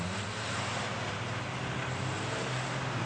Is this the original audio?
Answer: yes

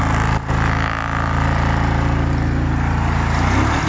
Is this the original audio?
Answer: yes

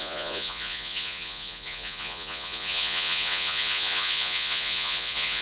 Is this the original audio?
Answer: no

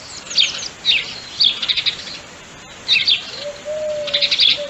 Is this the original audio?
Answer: yes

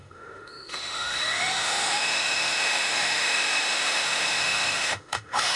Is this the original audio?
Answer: no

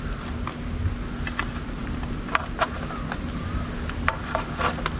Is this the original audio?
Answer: yes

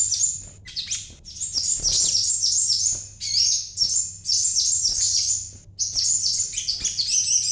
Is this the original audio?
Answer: yes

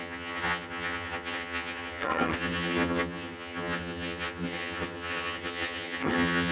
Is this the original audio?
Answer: no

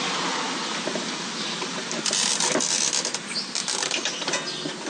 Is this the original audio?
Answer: yes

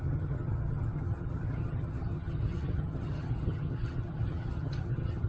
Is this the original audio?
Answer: no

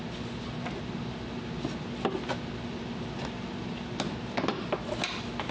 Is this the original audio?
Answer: yes